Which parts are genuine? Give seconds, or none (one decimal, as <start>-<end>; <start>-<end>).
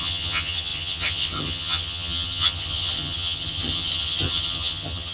none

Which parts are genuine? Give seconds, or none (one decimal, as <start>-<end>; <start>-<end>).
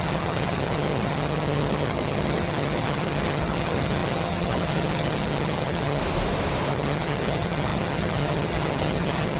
6.0-6.7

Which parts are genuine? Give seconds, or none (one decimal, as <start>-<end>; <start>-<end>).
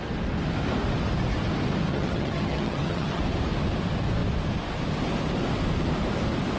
0.0-1.9; 3.2-6.6